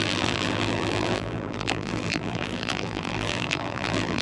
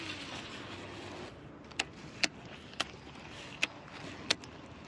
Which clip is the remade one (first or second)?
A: first